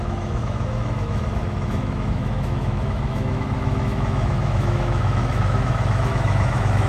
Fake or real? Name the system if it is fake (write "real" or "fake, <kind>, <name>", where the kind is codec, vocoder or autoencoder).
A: fake, autoencoder, DAC-VAE